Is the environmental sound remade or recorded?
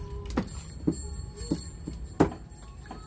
recorded